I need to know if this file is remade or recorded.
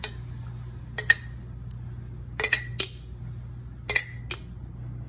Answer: recorded